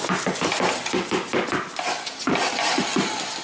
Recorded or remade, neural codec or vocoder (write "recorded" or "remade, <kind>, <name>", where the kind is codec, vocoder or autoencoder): recorded